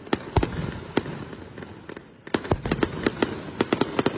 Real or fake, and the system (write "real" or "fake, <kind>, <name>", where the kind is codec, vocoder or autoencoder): real